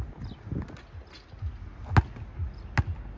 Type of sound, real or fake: real